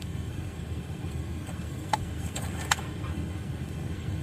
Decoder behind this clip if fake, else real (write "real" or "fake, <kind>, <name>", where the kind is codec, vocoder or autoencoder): fake, codec, SNAC